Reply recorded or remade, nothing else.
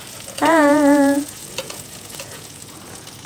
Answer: remade